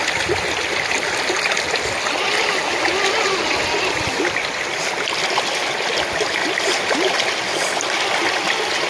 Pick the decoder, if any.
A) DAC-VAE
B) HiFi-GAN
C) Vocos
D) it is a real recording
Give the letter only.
D